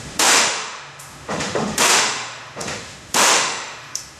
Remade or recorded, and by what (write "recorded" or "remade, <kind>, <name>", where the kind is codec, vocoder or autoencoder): remade, autoencoder, DAC-VAE